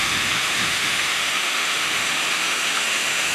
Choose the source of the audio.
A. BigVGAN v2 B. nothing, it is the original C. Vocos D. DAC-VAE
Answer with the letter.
D